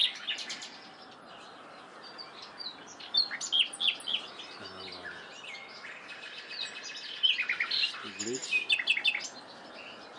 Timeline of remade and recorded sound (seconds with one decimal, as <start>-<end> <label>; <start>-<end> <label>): 0.0-1.9 recorded; 1.9-3.4 remade; 3.4-10.2 recorded

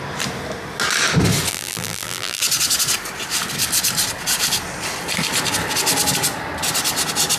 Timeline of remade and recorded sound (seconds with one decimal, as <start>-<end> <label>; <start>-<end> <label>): 0.0-1.5 recorded; 1.5-2.4 remade; 2.4-7.4 recorded